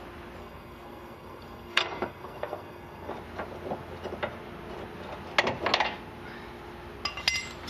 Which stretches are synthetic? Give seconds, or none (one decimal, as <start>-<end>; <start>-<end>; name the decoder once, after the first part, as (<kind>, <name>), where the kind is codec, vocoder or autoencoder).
0.4-3.1 (codec, SNAC)